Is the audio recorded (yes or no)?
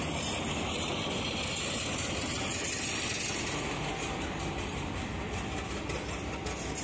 yes